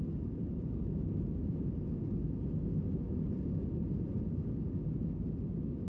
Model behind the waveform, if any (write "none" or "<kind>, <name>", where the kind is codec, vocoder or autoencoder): none